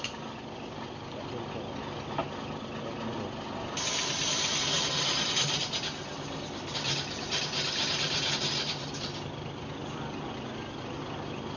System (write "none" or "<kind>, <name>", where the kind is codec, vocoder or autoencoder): none